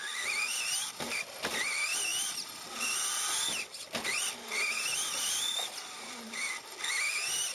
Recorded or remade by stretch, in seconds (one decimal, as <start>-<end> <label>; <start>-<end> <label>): 0.0-5.1 recorded; 5.1-6.5 remade; 6.5-7.5 recorded